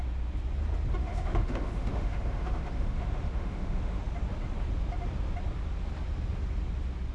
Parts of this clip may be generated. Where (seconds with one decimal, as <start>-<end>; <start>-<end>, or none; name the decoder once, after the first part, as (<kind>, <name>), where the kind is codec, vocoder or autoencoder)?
1.0-4.0 (autoencoder, DAC-VAE)